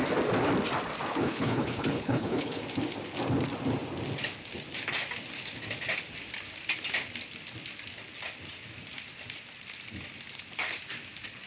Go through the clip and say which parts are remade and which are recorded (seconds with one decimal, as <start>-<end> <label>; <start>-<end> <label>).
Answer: 0.0-1.1 recorded; 1.1-2.6 remade; 2.6-11.5 recorded